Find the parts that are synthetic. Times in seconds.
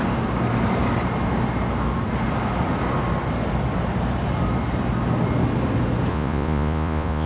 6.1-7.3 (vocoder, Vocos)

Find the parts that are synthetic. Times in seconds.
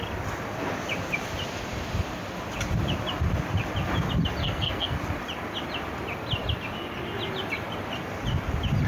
4.4-5.0 (codec, SNAC)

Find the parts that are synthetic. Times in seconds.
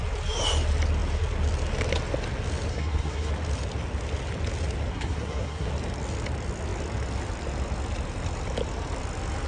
2.7-3.3 (codec, SNAC); 4.9-5.7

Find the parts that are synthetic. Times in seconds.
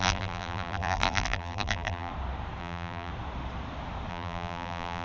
0.0-2.1 (vocoder, BigVGAN v2); 2.6-3.1; 4.1-5.0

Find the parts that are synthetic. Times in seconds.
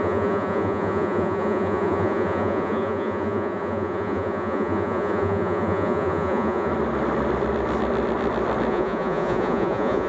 0.0-6.7 (vocoder, Vocos); 8.7-10.1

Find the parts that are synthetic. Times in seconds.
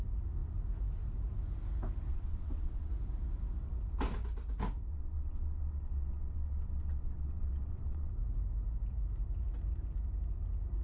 2.1-2.9 (vocoder, WaveNeXt); 4.9-8.1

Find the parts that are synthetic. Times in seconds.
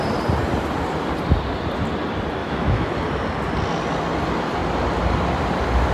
2.4-2.9 (autoencoder, DAC-VAE)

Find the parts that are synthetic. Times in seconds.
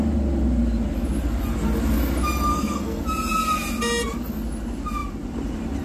2.5-3.0 (codec, SNAC)